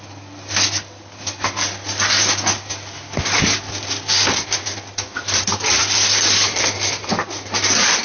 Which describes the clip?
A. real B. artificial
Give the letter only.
A